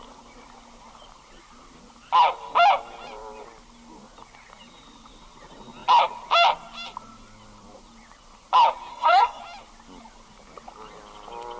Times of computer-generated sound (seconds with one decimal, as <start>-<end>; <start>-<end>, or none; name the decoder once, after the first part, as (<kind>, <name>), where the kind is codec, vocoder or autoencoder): 8.9-9.4 (codec, SNAC)